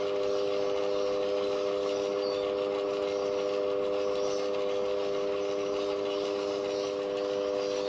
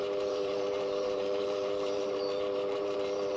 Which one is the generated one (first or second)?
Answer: second